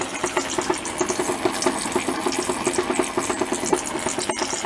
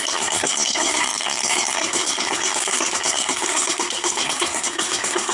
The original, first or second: first